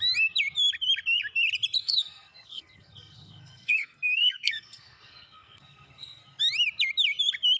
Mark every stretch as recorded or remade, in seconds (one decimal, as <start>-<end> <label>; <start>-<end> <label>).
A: 0.0-1.8 recorded; 1.8-6.4 remade; 6.4-7.6 recorded